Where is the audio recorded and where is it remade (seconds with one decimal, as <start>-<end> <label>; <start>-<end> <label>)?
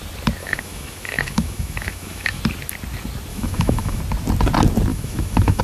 0.0-0.4 recorded; 0.4-2.4 remade; 2.4-3.3 recorded; 3.3-4.0 remade; 4.0-4.9 recorded; 4.9-5.6 remade